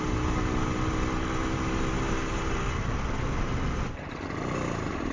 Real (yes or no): yes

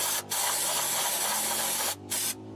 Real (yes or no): yes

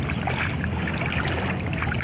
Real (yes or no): yes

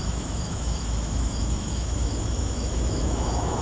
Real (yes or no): no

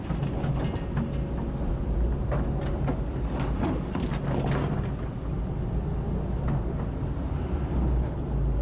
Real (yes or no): yes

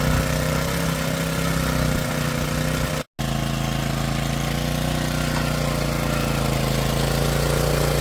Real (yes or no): yes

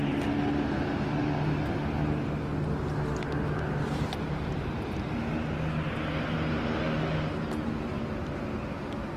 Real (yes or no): yes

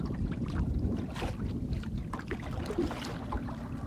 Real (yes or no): yes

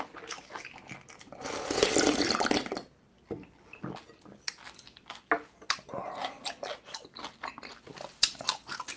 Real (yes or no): yes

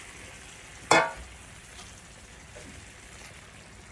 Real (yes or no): yes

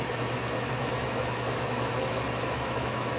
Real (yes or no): no